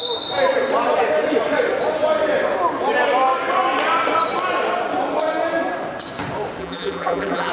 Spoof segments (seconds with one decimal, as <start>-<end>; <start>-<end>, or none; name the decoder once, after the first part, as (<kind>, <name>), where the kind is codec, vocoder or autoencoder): 6.6-7.5 (vocoder, BigVGAN v2)